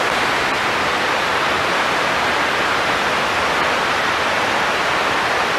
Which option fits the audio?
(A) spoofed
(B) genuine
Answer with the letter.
B